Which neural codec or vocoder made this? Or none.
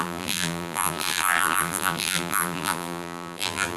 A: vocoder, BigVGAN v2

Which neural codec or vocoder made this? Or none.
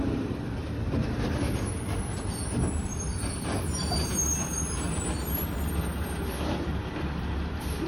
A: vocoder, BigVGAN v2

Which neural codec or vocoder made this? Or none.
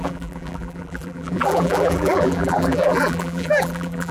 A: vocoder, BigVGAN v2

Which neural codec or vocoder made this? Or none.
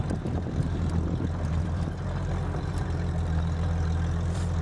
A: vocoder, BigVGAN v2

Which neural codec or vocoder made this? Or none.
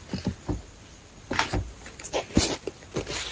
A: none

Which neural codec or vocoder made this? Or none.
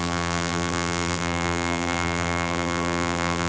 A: vocoder, BigVGAN v2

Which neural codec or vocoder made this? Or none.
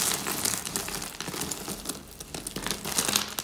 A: none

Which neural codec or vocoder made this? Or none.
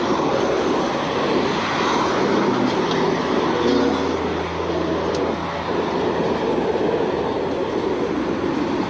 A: none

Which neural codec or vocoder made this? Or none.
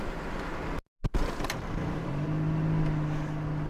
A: none